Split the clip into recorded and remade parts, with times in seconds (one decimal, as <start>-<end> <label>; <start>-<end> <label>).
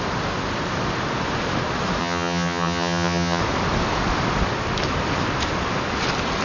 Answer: 0.0-2.0 recorded; 2.0-3.4 remade; 3.4-6.4 recorded